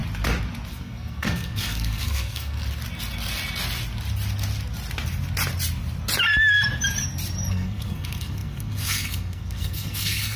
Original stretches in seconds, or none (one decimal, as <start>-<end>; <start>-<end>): 0.0-0.7; 2.6-7.5

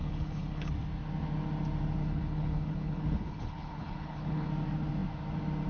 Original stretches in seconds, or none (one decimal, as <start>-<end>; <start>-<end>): 0.7-2.0; 4.5-5.7

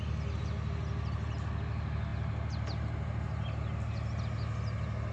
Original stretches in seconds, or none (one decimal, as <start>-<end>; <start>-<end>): 0.0-5.1

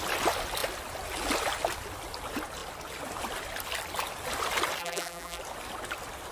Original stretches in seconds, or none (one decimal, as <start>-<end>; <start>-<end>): 0.0-4.8; 5.4-6.3